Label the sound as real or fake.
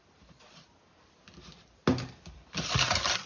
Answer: real